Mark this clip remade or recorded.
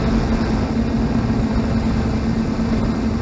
recorded